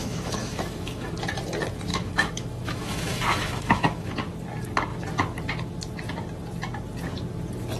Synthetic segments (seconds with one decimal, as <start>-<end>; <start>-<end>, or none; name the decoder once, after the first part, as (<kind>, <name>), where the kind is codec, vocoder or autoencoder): 0.0-1.1 (autoencoder, DAC-VAE); 1.9-4.1